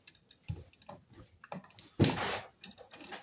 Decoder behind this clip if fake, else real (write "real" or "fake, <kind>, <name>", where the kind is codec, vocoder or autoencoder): real